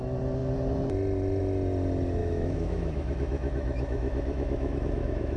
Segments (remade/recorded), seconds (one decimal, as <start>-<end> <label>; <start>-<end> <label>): 0.0-2.2 recorded; 2.2-5.4 remade